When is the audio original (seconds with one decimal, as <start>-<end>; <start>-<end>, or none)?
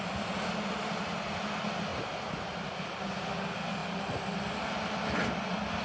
0.0-1.9; 2.7-3.8; 4.8-5.8